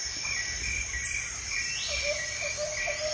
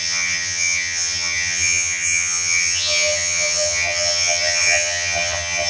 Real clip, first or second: first